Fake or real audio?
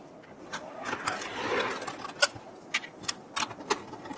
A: real